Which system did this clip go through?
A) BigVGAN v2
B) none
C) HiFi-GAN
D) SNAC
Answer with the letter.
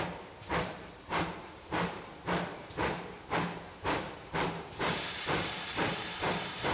A